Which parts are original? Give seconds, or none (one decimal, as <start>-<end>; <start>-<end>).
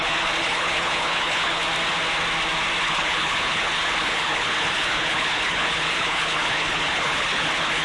1.6-2.8